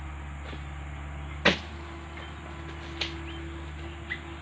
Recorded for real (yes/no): yes